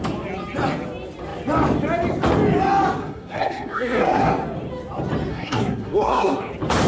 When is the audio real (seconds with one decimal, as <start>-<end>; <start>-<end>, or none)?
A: 0.0-3.0; 4.3-5.3; 6.5-6.9